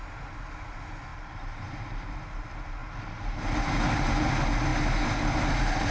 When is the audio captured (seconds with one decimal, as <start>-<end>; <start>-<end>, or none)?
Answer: 0.0-1.1; 1.8-2.8; 3.6-5.9